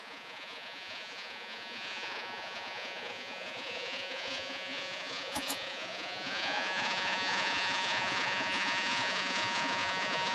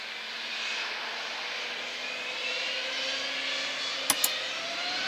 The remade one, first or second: first